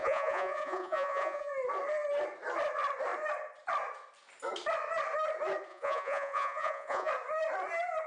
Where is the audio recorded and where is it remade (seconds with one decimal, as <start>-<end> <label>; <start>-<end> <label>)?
0.0-1.5 remade; 1.5-5.7 recorded; 5.7-7.1 remade; 7.1-8.1 recorded